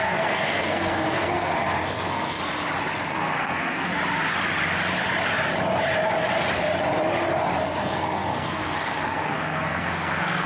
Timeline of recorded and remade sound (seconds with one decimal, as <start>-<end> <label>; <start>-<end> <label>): 0.0-2.4 remade; 2.4-3.1 recorded; 3.1-3.9 remade; 3.9-7.8 recorded; 7.8-10.5 remade